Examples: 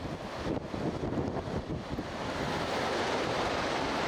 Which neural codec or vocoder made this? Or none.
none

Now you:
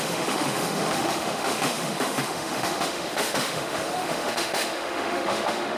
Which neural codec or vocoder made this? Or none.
autoencoder, DAC-VAE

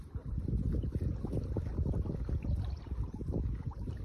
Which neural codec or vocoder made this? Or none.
none